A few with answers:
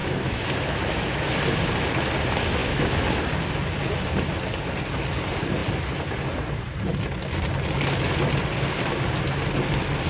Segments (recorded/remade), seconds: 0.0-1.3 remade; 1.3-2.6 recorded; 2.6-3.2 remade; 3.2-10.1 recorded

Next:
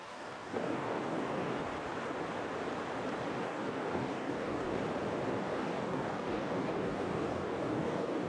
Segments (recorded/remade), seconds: 0.0-1.6 remade; 1.6-3.3 recorded; 3.3-4.8 remade; 4.8-5.4 recorded; 5.4-8.3 remade

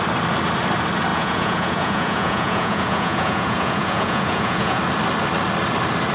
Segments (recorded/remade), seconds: 0.0-1.1 recorded; 1.1-4.8 remade; 4.8-6.1 recorded

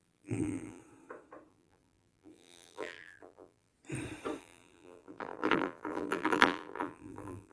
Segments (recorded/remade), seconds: 0.0-0.8 remade; 0.8-1.5 recorded; 1.5-3.7 remade; 3.7-4.4 recorded; 4.4-7.5 remade

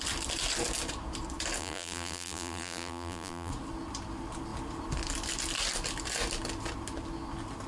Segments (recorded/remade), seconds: 0.0-1.6 recorded; 1.6-3.5 remade; 3.5-7.7 recorded

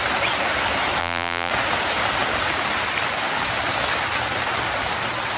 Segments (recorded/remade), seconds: 0.0-1.0 recorded; 1.0-1.5 remade; 1.5-5.4 recorded